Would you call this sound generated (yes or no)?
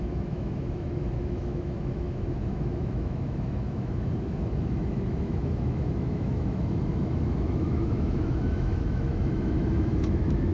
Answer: yes